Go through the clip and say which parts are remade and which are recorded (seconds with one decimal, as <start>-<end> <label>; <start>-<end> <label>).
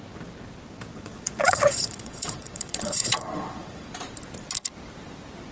0.0-0.9 recorded; 0.9-3.9 remade; 3.9-5.5 recorded